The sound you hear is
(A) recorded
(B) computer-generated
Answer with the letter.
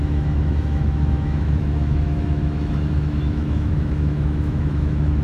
B